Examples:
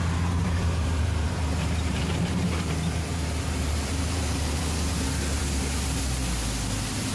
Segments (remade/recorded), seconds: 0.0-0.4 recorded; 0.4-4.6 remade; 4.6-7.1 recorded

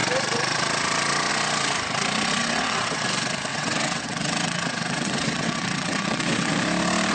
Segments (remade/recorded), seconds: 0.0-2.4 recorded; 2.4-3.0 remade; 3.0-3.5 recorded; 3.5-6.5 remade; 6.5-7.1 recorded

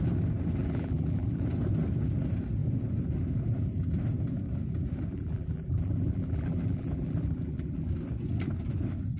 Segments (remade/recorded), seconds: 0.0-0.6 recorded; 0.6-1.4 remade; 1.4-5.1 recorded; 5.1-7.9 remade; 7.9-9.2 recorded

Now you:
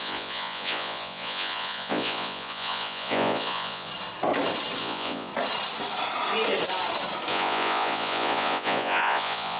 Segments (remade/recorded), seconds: 0.0-3.9 remade; 3.9-4.8 recorded; 4.8-5.3 remade; 5.3-7.3 recorded; 7.3-9.6 remade

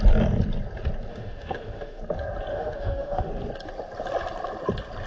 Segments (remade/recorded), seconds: 0.0-1.1 recorded; 1.1-2.0 remade; 2.0-2.5 recorded; 2.5-3.3 remade; 3.3-5.1 recorded